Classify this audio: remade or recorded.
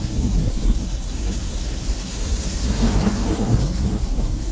remade